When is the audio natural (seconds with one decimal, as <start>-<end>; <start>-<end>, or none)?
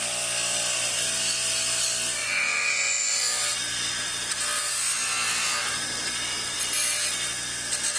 0.0-2.2; 3.2-8.0